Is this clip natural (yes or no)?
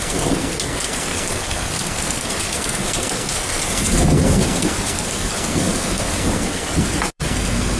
no